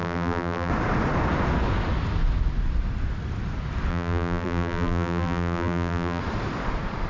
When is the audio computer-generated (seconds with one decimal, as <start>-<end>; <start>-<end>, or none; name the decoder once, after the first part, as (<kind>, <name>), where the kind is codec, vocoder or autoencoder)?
0.0-0.7 (vocoder, BigVGAN v2); 3.9-6.2